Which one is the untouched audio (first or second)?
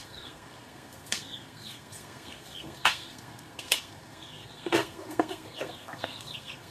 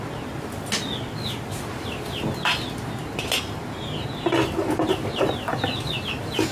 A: second